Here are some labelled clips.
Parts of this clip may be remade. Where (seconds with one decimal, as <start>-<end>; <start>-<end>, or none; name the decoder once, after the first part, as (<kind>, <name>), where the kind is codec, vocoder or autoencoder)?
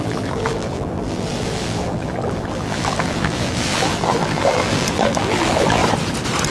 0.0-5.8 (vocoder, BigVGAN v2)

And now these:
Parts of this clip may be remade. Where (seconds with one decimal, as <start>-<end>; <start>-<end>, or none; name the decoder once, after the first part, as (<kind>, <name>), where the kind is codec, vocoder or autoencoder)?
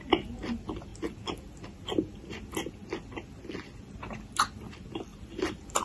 5.1-5.8 (vocoder, BigVGAN v2)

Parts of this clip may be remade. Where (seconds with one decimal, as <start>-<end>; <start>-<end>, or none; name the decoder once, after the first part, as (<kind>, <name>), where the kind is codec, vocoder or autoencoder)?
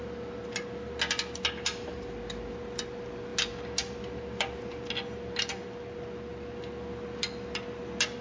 none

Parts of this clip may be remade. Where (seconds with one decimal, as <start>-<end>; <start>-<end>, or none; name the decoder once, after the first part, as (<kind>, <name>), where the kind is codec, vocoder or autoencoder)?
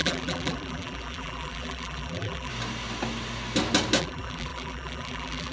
0.0-2.5 (vocoder, BigVGAN v2); 4.0-5.5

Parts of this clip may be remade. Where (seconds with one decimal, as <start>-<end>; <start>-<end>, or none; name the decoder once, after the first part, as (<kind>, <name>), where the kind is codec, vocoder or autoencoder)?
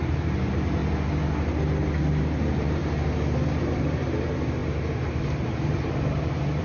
0.0-0.8 (vocoder, BigVGAN v2); 2.2-2.8; 3.8-6.6